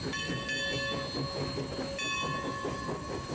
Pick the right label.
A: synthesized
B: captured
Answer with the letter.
B